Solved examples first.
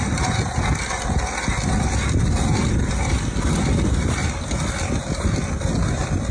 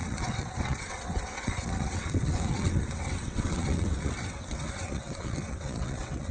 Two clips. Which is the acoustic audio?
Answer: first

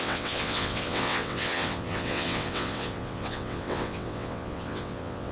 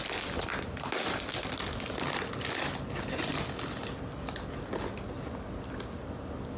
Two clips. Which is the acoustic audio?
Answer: second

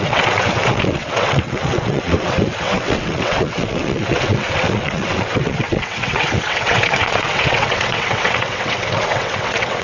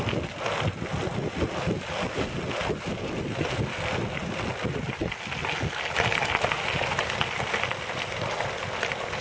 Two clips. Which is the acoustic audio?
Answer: second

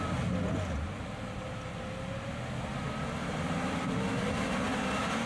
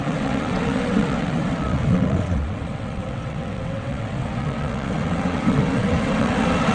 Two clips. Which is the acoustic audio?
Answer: first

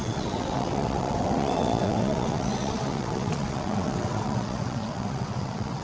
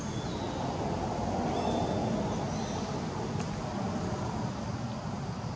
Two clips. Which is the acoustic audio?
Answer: second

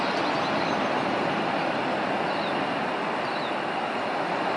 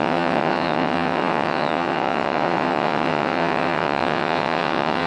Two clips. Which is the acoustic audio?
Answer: first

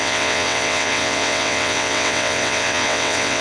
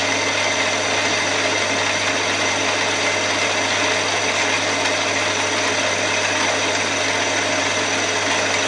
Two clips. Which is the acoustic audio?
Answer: second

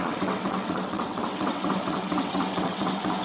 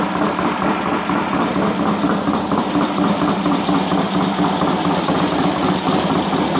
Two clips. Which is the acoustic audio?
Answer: second